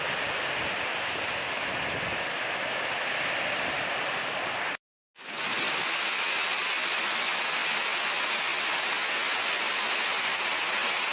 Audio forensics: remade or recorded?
recorded